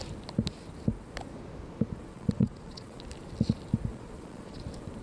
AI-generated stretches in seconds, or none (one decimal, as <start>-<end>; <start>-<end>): 2.1-3.0; 3.9-4.6